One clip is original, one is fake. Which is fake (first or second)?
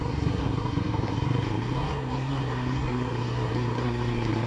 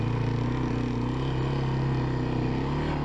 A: first